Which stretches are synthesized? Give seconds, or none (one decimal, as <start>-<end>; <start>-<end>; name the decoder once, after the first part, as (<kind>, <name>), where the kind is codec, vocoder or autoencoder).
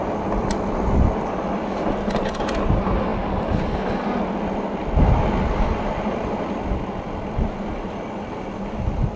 none